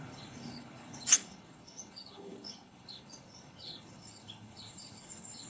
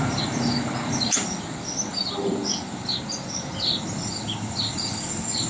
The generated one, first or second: first